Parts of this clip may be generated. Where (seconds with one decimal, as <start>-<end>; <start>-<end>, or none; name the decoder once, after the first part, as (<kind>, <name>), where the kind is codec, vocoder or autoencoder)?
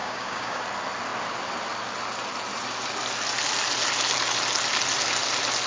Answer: 0.0-0.6 (codec, DAC)